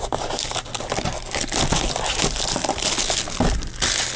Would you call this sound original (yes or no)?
yes